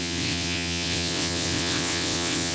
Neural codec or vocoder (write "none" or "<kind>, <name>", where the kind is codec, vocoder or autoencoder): vocoder, WaveNeXt